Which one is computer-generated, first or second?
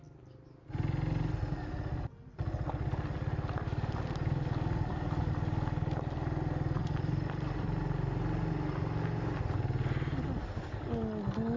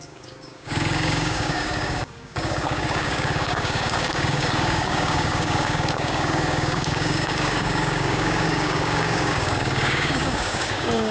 second